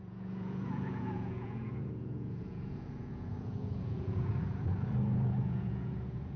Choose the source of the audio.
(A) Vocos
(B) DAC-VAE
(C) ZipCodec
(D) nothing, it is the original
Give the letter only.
A